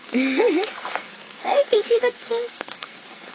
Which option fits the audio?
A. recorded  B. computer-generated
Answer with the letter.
B